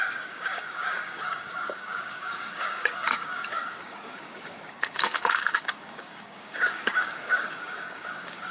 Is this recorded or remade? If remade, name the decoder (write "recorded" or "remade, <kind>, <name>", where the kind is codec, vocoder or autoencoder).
remade, codec, DAC